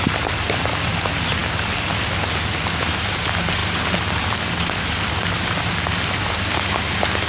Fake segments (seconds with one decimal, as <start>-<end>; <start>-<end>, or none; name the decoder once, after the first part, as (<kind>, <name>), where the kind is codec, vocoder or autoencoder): none